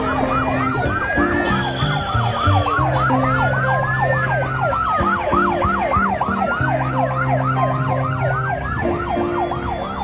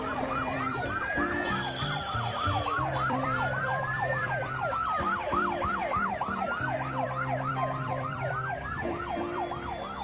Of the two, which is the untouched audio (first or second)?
first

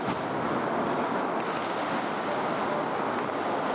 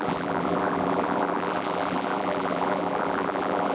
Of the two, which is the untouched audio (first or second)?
first